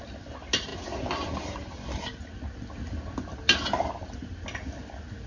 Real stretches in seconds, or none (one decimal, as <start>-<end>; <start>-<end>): 0.0-5.3